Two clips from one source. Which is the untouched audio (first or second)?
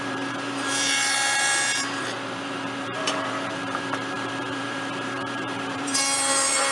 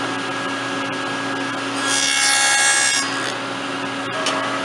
second